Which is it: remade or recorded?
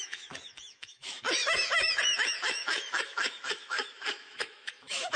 remade